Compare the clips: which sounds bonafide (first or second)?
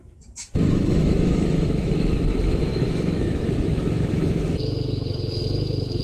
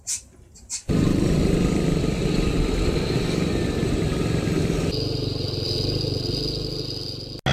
second